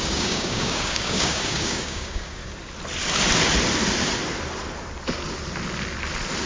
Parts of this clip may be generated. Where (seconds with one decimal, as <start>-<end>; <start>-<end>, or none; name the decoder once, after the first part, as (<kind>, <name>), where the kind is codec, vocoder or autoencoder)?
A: 0.0-2.4 (codec, DAC)